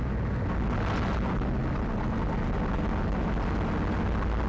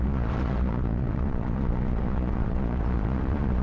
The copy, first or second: second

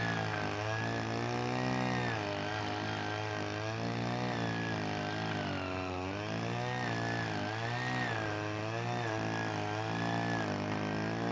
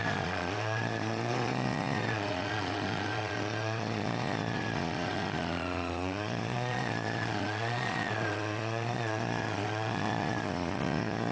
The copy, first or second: second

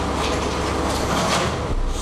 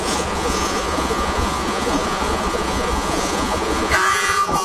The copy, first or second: second